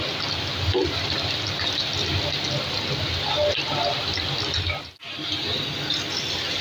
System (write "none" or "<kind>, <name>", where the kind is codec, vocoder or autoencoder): none